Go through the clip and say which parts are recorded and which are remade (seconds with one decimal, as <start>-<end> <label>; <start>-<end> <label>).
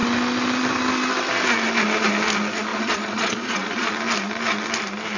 0.0-2.7 recorded; 2.7-3.9 remade; 3.9-5.2 recorded